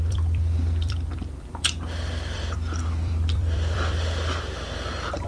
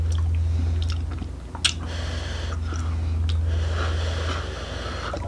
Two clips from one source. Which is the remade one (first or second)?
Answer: first